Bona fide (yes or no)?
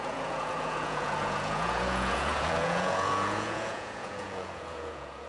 no